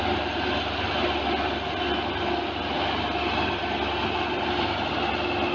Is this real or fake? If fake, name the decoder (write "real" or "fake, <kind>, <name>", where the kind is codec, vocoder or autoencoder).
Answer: real